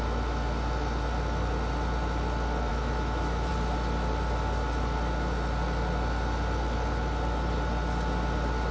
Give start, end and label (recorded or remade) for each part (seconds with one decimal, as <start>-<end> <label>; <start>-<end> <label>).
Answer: 0.0-2.7 recorded; 2.7-3.5 remade; 3.5-8.7 recorded